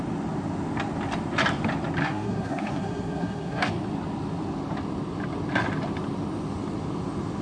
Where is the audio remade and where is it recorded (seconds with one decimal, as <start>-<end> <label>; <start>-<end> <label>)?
0.0-2.0 recorded; 2.0-3.7 remade; 3.7-7.4 recorded